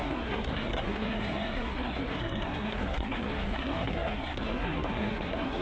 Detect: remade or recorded remade